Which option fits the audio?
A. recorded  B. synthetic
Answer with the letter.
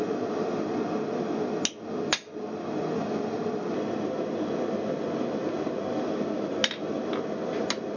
A